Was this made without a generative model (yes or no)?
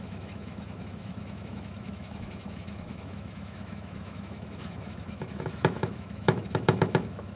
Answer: no